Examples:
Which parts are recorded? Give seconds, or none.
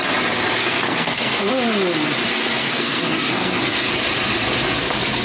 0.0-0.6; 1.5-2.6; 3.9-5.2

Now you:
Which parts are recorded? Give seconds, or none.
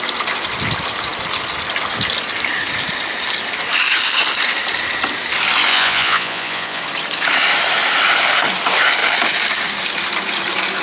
0.0-5.7; 6.8-10.8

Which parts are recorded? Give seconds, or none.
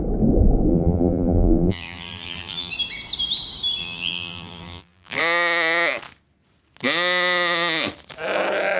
0.0-0.7; 2.7-3.8; 5.2-8.8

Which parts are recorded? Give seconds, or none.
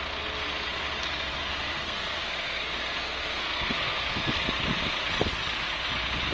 0.0-1.4; 4.3-6.3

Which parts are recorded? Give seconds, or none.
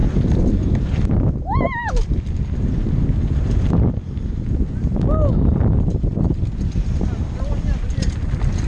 none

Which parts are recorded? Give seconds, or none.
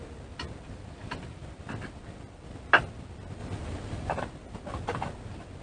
0.0-5.6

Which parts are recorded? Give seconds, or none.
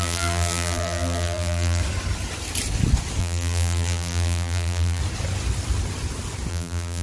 1.8-3.2; 5.0-6.5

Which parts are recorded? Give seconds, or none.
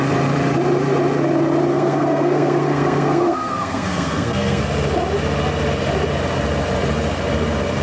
0.0-1.7; 4.6-7.8